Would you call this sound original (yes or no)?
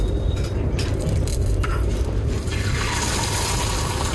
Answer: yes